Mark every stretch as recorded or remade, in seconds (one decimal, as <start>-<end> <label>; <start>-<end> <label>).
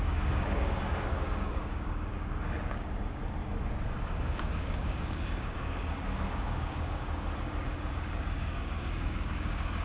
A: 0.0-3.2 remade; 3.2-4.0 recorded; 4.0-9.8 remade